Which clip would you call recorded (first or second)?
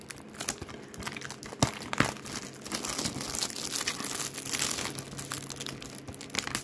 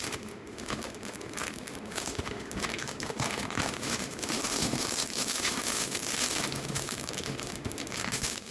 first